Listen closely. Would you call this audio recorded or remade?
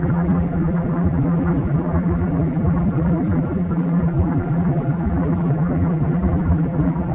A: remade